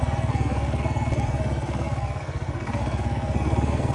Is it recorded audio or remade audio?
remade